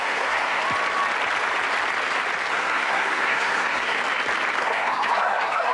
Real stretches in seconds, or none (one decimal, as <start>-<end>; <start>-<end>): 0.6-2.5; 4.0-4.6